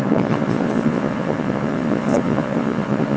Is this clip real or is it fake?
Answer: fake